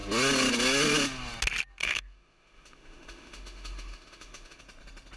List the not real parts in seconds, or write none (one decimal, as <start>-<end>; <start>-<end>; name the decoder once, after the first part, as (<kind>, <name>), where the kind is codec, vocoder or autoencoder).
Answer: 1.8-4.6 (autoencoder, DAC-VAE)